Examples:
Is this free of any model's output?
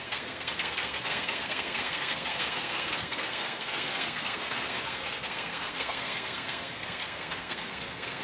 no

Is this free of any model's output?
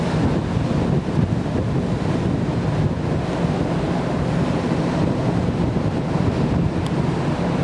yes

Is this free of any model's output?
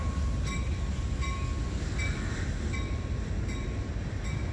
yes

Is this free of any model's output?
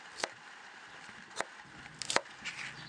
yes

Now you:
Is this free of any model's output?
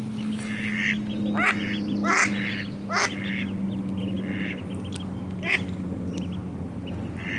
yes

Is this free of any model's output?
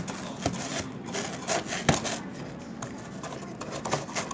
yes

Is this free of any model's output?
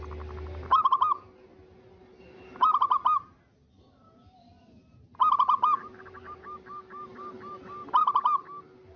yes